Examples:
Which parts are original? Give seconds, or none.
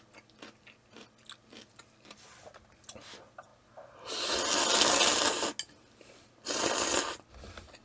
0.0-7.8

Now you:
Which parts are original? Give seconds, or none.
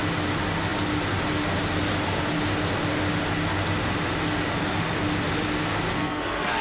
0.0-5.9